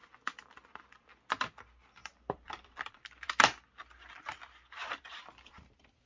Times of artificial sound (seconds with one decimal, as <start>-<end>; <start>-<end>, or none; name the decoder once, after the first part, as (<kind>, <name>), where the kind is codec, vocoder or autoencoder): 0.0-1.6 (vocoder, BigVGAN v2); 2.0-5.1